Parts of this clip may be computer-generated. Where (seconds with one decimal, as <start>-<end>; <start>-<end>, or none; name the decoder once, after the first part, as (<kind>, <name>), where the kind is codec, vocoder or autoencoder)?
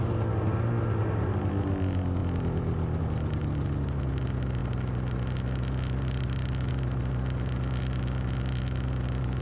none